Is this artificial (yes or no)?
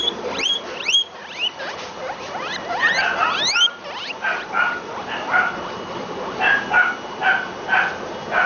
no